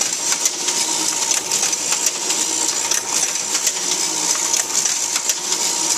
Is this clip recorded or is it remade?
recorded